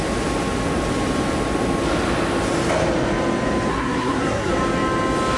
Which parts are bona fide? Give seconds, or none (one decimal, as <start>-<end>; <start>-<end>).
0.0-3.7; 4.5-5.4